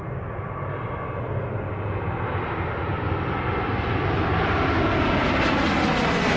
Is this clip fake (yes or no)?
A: no